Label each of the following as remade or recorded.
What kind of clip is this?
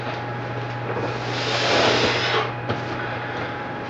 recorded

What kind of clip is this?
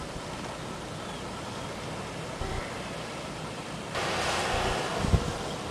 recorded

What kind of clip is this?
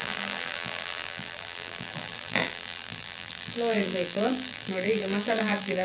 remade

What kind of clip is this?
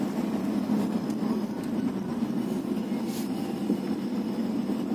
recorded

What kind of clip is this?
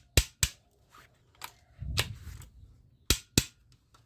recorded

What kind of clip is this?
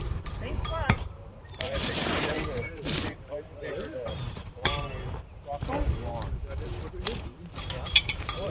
remade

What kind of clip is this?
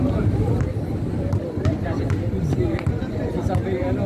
recorded